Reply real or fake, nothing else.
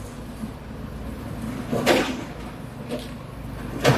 real